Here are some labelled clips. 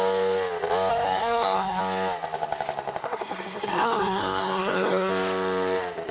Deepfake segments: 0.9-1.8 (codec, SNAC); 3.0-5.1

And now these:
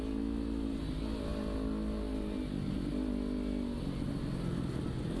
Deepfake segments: none